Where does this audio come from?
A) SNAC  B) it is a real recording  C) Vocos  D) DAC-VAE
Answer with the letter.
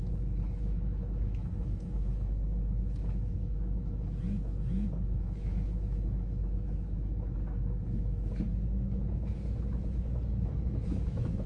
D